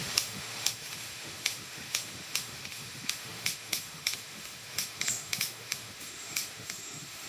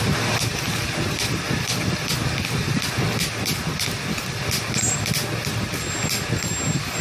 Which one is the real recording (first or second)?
second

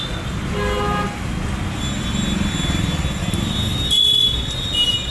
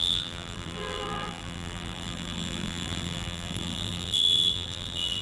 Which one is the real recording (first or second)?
first